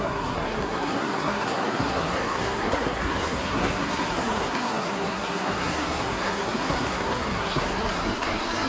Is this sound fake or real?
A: fake